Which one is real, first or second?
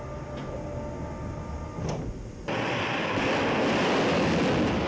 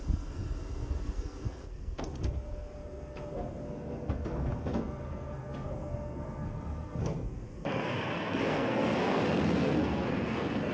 first